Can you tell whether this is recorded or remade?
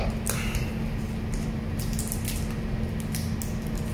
recorded